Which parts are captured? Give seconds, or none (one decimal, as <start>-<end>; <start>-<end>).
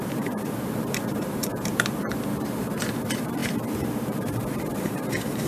none